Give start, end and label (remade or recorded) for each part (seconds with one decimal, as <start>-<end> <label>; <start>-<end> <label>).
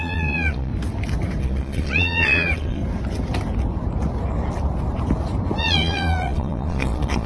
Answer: 0.0-0.7 remade; 0.7-1.4 recorded; 1.4-2.8 remade; 2.8-5.6 recorded; 5.6-7.3 remade